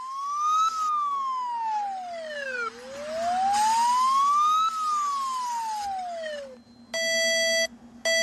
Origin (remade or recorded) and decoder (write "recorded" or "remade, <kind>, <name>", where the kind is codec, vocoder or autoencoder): recorded